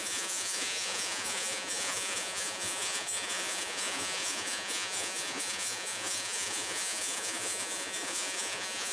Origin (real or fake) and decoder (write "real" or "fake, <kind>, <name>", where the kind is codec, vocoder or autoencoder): fake, vocoder, Vocos